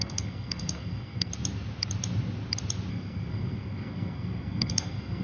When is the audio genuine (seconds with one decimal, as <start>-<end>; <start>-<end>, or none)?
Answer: 1.3-2.9